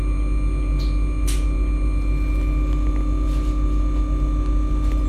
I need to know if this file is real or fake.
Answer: real